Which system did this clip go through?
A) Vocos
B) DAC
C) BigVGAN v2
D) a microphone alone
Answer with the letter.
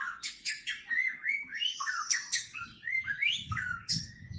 B